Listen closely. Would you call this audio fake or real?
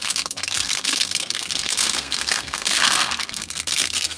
fake